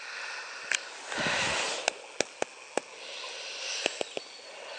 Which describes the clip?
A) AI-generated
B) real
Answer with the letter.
B